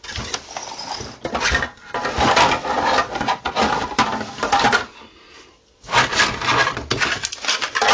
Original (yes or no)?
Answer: yes